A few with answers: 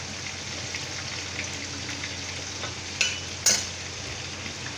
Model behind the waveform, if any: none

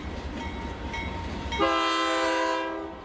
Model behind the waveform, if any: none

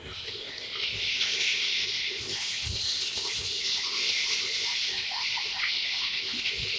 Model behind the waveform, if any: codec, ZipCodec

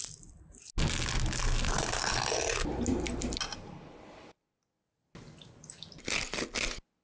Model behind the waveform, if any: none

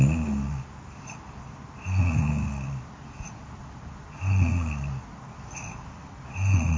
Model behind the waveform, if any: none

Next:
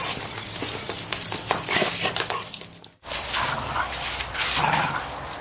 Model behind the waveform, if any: none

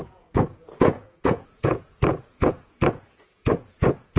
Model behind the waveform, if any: vocoder, Vocos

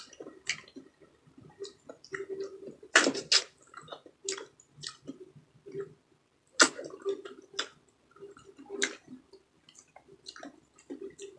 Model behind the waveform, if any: none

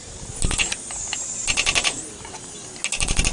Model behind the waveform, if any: none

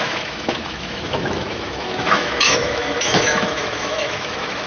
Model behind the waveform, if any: autoencoder, DAC-VAE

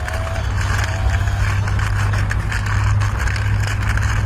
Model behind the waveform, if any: none